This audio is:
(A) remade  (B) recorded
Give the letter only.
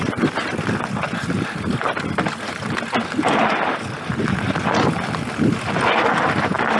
B